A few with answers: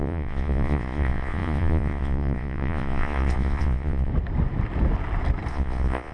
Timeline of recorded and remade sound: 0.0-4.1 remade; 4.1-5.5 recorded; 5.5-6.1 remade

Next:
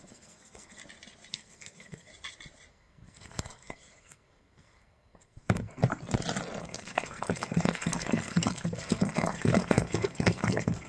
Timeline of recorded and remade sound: 0.0-0.8 remade; 0.8-1.3 recorded; 1.3-2.1 remade; 2.1-2.7 recorded; 2.7-5.8 remade; 5.8-6.6 recorded; 6.6-10.9 remade

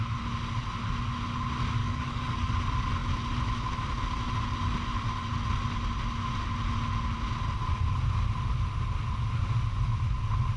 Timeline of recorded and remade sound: 0.0-1.8 recorded; 1.8-2.5 remade; 2.5-10.6 recorded

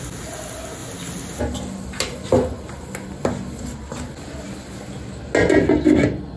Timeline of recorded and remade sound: 0.0-6.4 recorded